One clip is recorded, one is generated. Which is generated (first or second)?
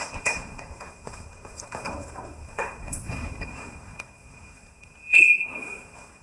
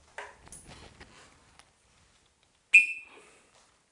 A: first